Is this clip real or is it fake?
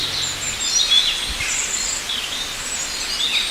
real